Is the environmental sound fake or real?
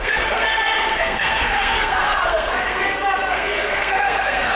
fake